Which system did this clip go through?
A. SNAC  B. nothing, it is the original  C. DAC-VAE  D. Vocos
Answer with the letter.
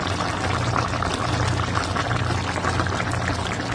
B